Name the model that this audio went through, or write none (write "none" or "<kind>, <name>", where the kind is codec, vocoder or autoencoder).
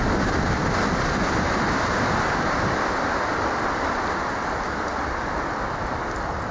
none